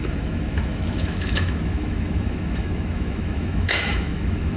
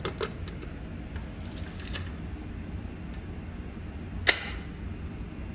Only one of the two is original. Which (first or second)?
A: second